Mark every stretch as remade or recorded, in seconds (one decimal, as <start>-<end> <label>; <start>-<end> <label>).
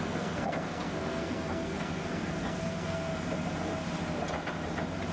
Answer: 0.0-3.1 remade; 3.1-5.1 recorded